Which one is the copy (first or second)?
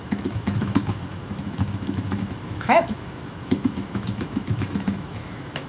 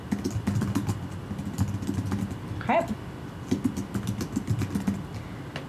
first